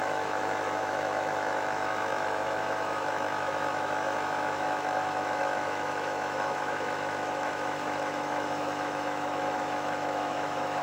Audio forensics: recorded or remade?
remade